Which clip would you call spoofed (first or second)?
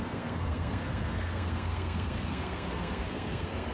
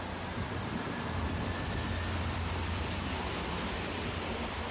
first